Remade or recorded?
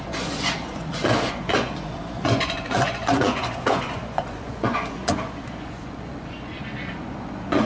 remade